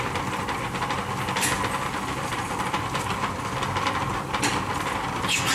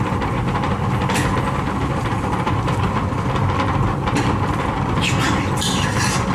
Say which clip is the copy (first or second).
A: second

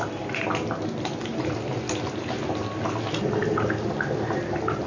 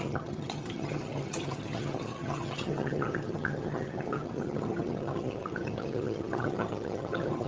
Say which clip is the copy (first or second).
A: second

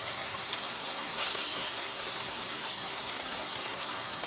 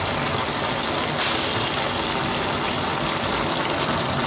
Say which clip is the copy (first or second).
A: first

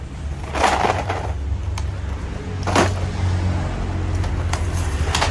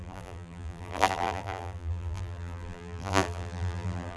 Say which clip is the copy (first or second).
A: second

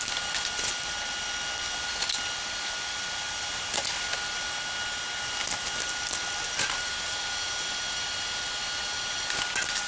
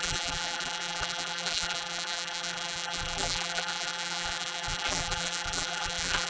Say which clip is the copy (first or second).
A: second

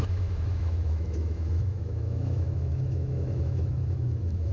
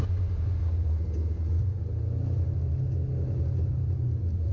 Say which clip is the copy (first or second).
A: first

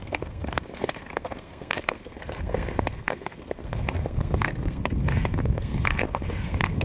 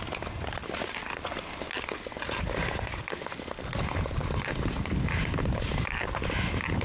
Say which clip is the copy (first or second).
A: first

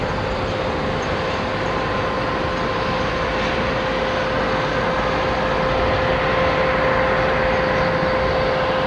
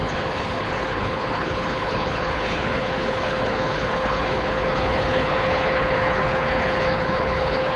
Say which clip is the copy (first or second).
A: second